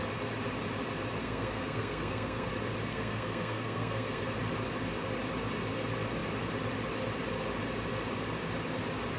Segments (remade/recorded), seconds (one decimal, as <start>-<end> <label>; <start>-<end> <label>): 0.0-1.2 recorded; 1.2-2.5 remade; 2.5-2.9 recorded; 2.9-4.2 remade; 4.2-9.2 recorded